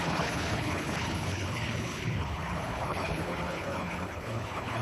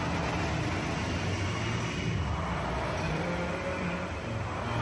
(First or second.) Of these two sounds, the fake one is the first